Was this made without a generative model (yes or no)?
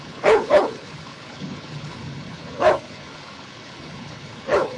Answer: no